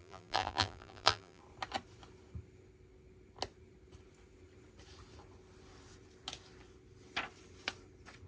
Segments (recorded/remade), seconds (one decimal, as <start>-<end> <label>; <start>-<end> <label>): 0.0-1.4 remade; 1.4-8.3 recorded

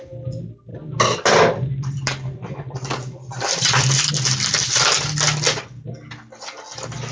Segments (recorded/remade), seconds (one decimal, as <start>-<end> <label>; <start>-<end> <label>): 0.0-0.7 recorded; 0.7-4.1 remade; 4.1-7.1 recorded